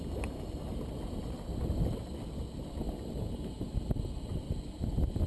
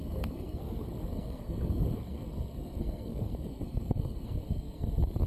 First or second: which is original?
first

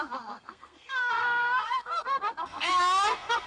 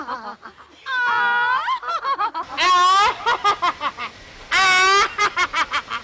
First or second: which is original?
second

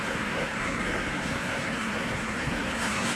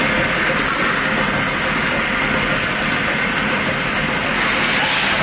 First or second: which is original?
second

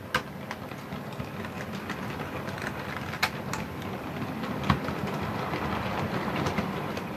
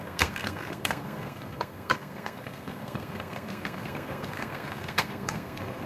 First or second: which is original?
first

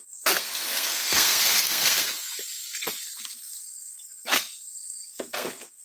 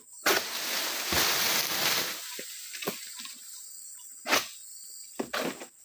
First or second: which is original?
second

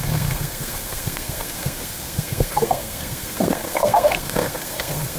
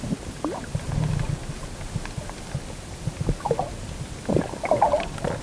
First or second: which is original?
second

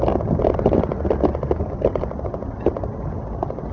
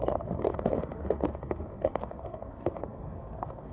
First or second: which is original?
first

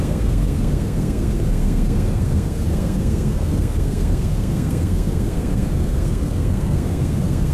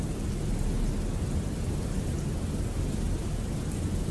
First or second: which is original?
second